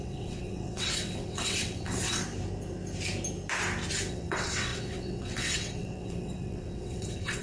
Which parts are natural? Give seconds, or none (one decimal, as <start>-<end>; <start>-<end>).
2.2-4.1